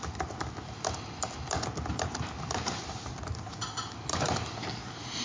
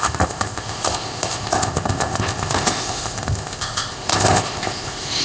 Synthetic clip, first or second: second